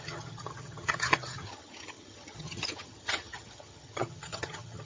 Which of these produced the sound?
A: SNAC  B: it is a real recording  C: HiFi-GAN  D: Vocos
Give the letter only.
C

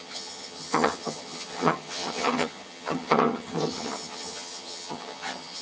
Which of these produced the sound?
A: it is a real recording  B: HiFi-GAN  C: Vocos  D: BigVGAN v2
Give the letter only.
B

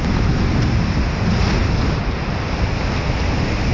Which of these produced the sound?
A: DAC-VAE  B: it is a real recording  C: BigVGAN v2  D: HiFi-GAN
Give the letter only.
B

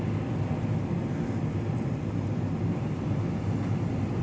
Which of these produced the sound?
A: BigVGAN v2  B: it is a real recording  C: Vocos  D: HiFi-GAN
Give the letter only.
B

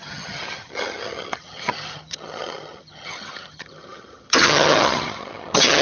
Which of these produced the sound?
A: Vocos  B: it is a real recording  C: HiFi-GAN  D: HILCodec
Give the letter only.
C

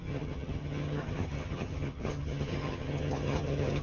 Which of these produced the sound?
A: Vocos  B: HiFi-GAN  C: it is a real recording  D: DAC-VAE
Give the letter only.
B